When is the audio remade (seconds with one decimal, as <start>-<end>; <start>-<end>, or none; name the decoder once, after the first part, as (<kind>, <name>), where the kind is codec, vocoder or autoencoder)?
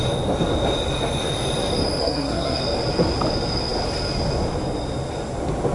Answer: 2.0-2.6 (codec, SNAC)